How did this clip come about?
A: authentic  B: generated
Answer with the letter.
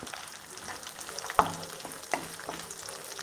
A